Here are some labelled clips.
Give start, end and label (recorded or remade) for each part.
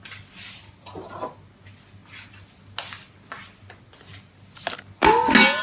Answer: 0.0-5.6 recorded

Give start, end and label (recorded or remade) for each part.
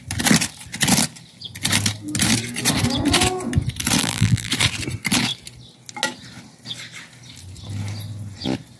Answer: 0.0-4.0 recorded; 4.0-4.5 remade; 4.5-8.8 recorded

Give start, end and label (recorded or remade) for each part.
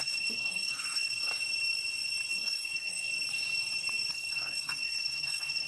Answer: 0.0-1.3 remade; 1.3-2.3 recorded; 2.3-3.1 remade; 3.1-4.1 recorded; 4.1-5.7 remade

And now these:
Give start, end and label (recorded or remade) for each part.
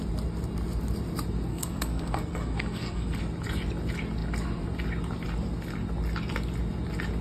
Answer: 0.0-1.5 recorded; 1.5-3.2 remade; 3.2-7.2 recorded